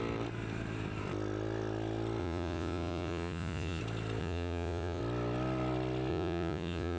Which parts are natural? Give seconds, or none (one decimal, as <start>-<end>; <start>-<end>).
0.0-2.2; 3.8-4.2; 5.0-6.1